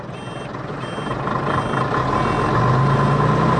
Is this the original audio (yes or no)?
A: yes